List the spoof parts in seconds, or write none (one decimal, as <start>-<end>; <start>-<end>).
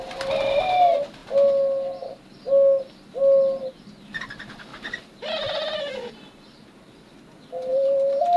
4.7-7.0; 7.7-8.4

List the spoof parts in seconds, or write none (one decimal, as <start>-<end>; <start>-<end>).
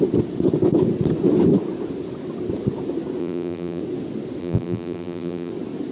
3.2-3.8; 4.4-5.5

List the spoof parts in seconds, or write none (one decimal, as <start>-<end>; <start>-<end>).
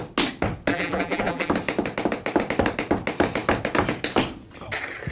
0.7-1.5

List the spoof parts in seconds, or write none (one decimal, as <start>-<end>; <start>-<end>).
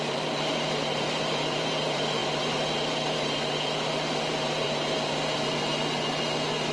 0.0-5.8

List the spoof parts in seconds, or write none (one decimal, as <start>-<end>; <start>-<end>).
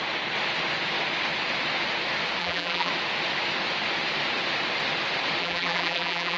2.4-2.9; 5.4-6.4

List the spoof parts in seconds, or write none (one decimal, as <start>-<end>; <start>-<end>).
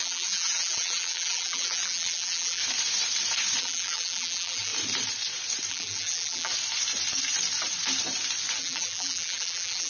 0.0-2.6; 3.6-4.7; 5.7-6.5; 8.6-9.9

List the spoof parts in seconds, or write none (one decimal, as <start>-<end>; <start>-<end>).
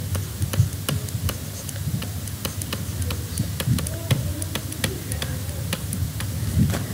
none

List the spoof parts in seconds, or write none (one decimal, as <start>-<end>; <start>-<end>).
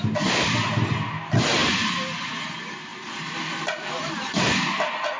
2.9-4.2